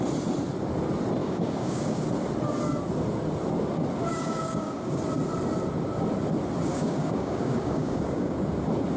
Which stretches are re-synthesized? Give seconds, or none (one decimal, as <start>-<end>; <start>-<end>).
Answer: 1.2-2.0; 4.1-5.0; 6.7-8.5